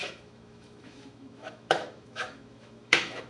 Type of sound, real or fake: fake